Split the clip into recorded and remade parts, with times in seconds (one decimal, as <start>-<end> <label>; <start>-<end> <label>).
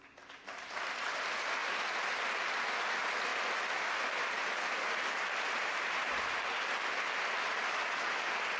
0.0-8.6 recorded